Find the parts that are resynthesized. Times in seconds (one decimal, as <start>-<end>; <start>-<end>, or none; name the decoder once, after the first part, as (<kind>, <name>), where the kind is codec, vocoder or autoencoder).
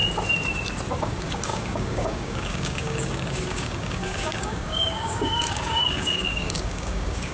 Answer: 1.0-7.3 (codec, DAC)